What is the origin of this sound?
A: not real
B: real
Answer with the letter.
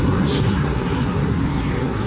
A